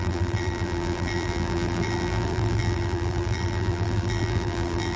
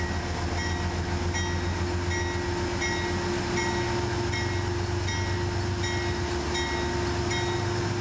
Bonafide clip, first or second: second